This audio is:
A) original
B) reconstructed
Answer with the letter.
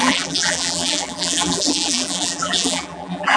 B